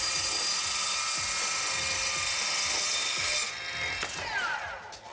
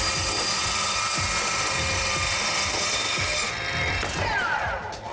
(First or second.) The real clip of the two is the first